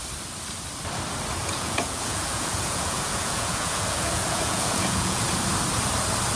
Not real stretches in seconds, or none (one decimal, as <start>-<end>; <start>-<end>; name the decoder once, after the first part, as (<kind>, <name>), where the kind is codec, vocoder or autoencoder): 1.4-5.2 (vocoder, Vocos)